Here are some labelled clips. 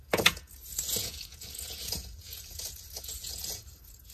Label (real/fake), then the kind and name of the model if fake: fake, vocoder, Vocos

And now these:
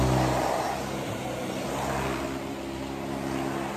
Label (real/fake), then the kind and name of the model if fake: real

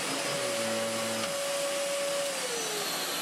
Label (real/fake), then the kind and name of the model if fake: real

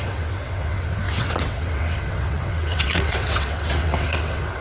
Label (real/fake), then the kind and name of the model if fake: fake, vocoder, WaveNeXt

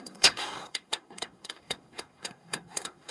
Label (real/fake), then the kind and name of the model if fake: fake, codec, SNAC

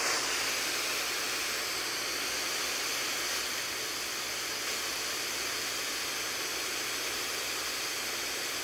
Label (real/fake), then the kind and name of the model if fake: real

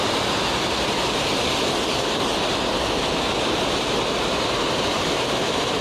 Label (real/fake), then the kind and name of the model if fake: real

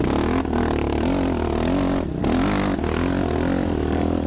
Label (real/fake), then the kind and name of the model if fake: real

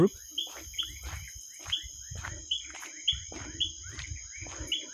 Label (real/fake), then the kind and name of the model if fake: real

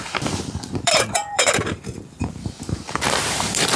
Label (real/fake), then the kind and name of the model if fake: fake, vocoder, BigVGAN v2